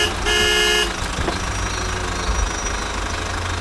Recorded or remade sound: recorded